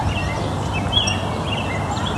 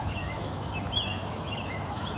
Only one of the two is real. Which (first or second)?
first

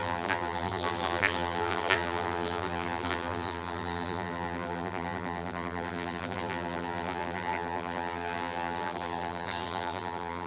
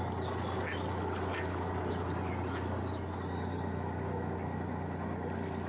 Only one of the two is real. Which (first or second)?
second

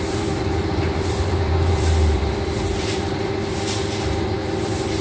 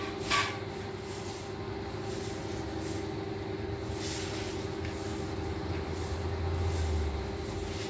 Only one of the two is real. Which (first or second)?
second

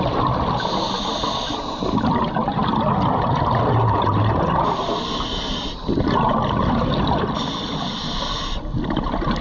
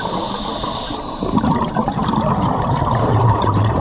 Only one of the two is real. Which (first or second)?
first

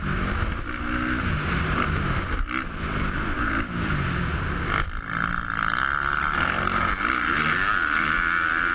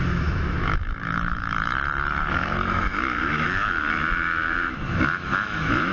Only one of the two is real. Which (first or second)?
first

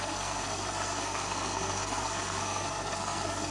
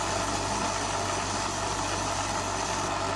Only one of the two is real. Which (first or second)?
second